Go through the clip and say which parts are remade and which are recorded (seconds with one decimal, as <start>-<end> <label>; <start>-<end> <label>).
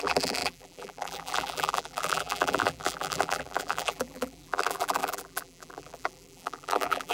0.0-7.1 remade